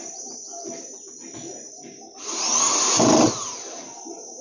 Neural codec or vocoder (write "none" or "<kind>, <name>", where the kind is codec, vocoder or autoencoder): none